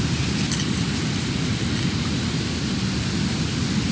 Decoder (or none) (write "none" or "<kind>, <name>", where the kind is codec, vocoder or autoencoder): none